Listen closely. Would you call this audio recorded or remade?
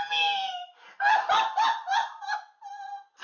recorded